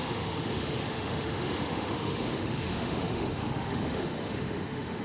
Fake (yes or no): yes